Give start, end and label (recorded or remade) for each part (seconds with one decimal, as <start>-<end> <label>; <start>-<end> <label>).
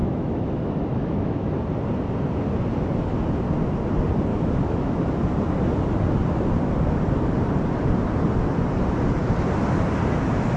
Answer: 0.0-1.5 remade; 1.5-4.3 recorded; 4.3-5.0 remade; 5.0-10.6 recorded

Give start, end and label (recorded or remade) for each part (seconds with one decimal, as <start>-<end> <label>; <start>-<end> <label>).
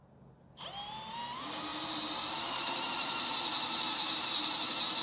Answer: 0.0-1.7 recorded; 1.7-5.0 remade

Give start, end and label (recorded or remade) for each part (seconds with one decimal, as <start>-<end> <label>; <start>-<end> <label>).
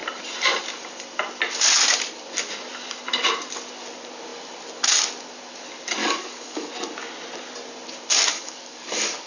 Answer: 0.0-6.0 recorded; 6.0-6.7 remade; 6.7-8.3 recorded; 8.3-9.3 remade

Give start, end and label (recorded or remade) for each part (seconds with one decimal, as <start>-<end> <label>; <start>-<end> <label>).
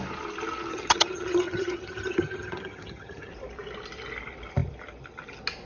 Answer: 0.0-0.7 recorded; 0.7-3.3 remade; 3.3-5.7 recorded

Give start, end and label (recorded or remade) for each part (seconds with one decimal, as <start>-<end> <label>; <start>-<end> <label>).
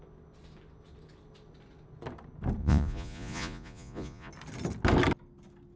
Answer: 0.0-2.6 recorded; 2.6-4.3 remade; 4.3-5.8 recorded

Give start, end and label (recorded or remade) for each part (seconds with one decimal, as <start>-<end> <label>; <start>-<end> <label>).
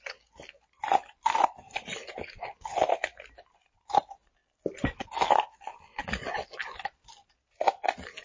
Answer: 0.0-4.4 recorded; 4.4-5.6 remade; 5.6-8.2 recorded